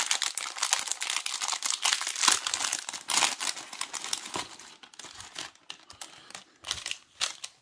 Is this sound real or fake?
real